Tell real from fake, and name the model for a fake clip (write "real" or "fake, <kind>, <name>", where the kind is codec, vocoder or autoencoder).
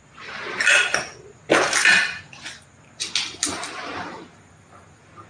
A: real